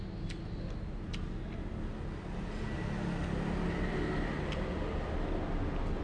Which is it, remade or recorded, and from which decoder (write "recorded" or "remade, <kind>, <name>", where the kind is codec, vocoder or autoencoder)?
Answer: recorded